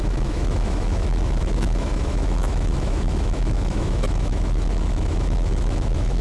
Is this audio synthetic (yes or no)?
yes